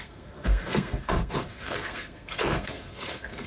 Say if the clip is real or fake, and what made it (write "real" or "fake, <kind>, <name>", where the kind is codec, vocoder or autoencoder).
fake, codec, SNAC